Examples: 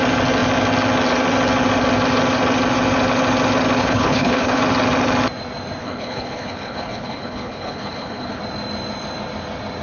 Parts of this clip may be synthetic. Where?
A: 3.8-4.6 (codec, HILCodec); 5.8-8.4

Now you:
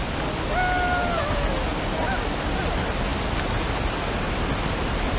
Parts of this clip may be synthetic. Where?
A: none

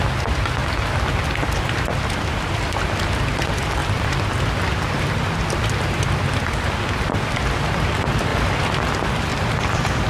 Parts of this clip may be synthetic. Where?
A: 3.8-6.6 (vocoder, BigVGAN v2); 9.3-10.1

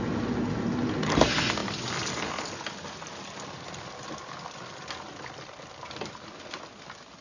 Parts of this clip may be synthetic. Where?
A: none

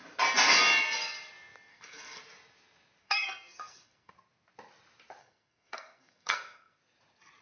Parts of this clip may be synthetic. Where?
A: 1.7-2.2 (codec, SNAC); 3.0-4.1; 5.2-6.8

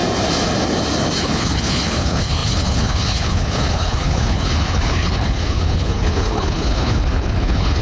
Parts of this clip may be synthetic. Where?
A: 1.2-7.8 (codec, HILCodec)

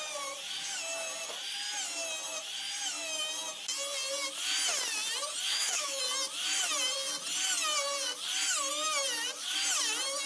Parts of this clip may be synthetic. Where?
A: 5.5-6.0 (autoencoder, DAC-VAE)

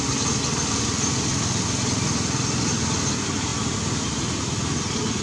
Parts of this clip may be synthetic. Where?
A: none